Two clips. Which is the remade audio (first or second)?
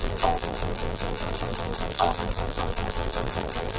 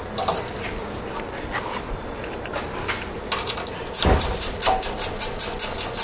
first